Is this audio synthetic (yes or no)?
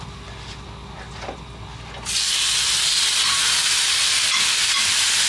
no